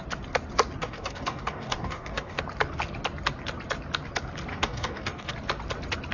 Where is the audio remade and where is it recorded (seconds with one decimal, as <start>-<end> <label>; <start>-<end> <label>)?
0.0-0.8 recorded; 0.8-2.4 remade; 2.4-4.5 recorded; 4.5-5.3 remade; 5.3-6.1 recorded